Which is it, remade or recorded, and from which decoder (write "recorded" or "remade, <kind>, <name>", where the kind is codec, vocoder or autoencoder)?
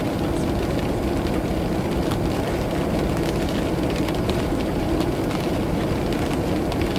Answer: recorded